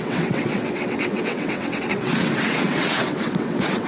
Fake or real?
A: fake